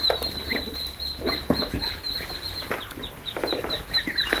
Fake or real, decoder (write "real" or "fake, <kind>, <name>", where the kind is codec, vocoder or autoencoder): real